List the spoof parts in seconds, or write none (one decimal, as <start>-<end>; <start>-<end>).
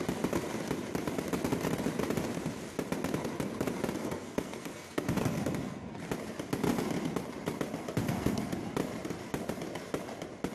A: 4.0-6.0; 8.0-8.5